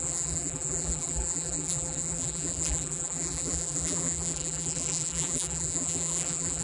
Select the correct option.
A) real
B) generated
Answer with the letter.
B